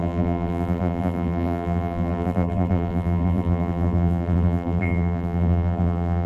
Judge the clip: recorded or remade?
remade